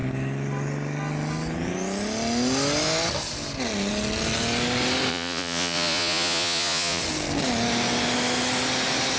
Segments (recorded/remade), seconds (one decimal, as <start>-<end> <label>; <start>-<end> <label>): 0.0-5.1 recorded; 5.1-7.0 remade; 7.0-9.2 recorded